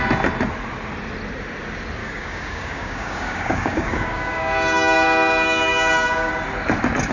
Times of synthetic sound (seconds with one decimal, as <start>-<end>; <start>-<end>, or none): 2.0-6.3